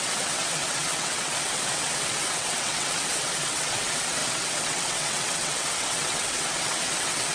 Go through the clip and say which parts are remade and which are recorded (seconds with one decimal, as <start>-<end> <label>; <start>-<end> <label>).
0.0-7.3 remade